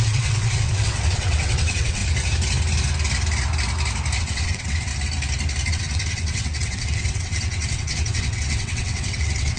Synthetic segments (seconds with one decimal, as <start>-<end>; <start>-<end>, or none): 0.0-2.0; 4.2-4.9; 5.7-9.6

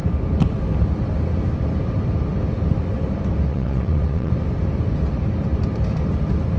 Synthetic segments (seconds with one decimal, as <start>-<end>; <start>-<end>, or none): 3.5-4.3

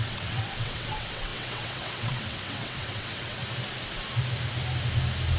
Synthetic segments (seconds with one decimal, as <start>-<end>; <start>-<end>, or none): 0.0-3.4

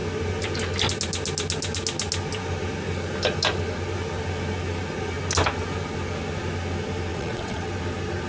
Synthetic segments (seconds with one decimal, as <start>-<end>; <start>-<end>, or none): 7.1-7.7

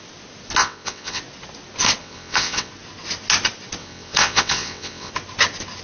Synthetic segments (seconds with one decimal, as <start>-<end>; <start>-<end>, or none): 0.6-1.2; 2.0-2.7; 3.8-5.1

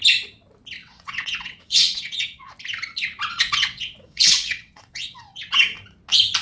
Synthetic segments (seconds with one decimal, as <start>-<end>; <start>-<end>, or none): 0.8-2.5; 3.3-5.6

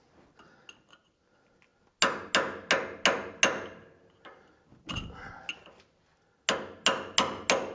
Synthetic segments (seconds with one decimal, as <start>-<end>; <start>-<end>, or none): none